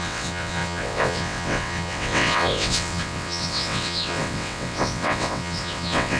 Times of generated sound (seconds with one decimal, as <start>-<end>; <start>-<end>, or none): 0.0-6.2